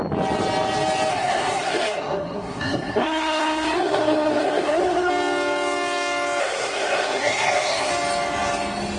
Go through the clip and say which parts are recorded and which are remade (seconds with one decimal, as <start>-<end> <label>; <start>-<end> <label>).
0.0-1.1 recorded; 1.1-5.1 remade; 5.1-6.4 recorded; 6.4-7.9 remade; 7.9-9.0 recorded